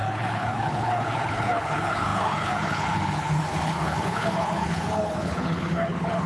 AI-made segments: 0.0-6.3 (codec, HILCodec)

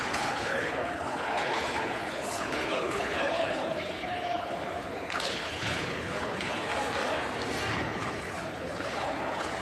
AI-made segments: 0.0-6.7 (codec, HILCodec); 7.7-9.6

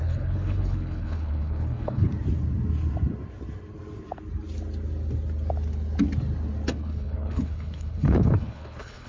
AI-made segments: 0.0-2.1 (codec, HILCodec); 6.7-9.1

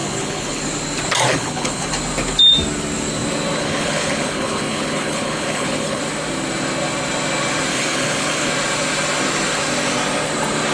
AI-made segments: 0.0-0.6 (codec, HILCodec); 1.3-1.9; 3.6-6.0; 7.7-8.5

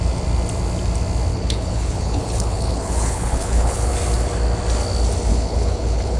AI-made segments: 1.3-3.9 (codec, HILCodec); 5.3-6.2